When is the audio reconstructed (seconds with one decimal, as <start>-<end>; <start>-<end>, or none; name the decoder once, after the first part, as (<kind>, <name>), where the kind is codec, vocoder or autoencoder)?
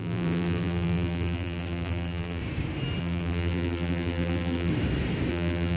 0.0-2.4 (vocoder, BigVGAN v2); 3.0-4.7; 5.3-5.8